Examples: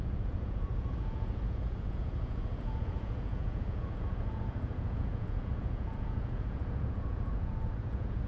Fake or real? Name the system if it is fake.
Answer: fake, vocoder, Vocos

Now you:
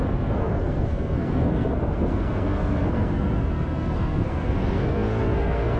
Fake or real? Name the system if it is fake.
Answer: fake, codec, SNAC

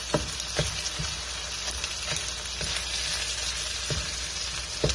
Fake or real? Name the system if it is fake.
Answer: real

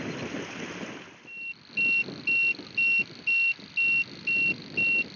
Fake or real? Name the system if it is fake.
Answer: real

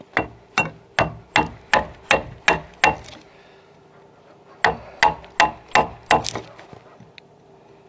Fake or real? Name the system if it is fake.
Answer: real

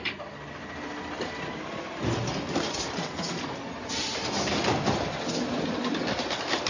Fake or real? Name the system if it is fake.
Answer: real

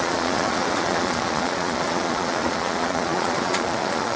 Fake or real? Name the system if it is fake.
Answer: fake, vocoder, Vocos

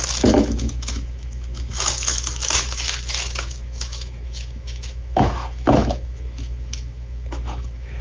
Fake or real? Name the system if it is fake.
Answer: fake, autoencoder, DAC-VAE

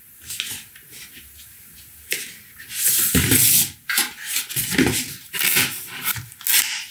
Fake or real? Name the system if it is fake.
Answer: real